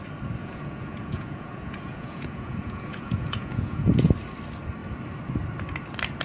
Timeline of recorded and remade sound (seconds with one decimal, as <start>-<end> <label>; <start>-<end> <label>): 0.0-0.4 recorded; 0.4-4.1 remade; 4.1-6.2 recorded